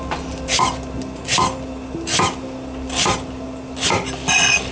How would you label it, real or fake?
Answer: real